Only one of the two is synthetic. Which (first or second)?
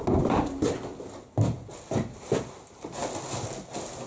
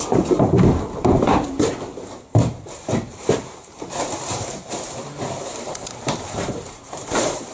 second